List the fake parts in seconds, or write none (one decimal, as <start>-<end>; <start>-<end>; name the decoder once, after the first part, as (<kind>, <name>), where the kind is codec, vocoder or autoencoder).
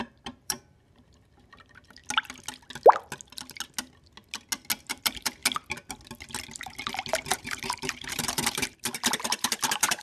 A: 0.0-2.0 (vocoder, BigVGAN v2); 5.0-5.4; 7.3-10.0